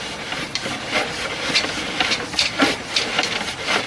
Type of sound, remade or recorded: recorded